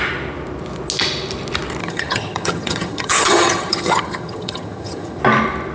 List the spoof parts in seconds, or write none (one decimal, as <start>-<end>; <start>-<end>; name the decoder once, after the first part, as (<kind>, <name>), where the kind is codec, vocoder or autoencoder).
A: 1.8-5.2 (vocoder, HiFi-GAN)